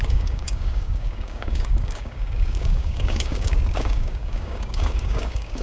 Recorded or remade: remade